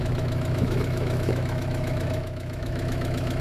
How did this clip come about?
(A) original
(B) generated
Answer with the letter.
B